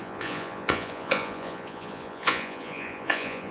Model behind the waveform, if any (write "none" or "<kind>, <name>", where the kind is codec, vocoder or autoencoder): vocoder, Vocos